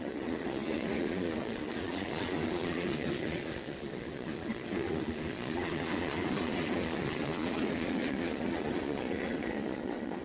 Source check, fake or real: fake